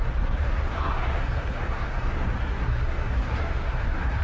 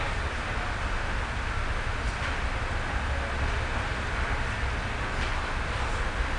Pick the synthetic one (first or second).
first